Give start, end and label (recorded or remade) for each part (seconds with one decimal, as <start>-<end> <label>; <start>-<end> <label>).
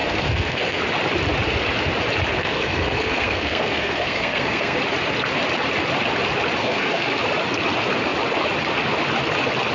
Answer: 0.0-0.8 remade; 0.8-2.3 recorded; 2.3-4.8 remade; 4.8-6.6 recorded; 6.6-7.2 remade; 7.2-9.7 recorded